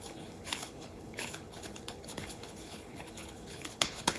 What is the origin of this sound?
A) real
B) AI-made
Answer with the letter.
B